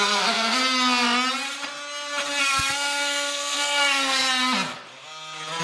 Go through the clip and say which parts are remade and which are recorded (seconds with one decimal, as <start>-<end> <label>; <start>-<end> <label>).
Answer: 0.0-0.6 remade; 0.6-2.4 recorded; 2.4-4.2 remade; 4.2-5.6 recorded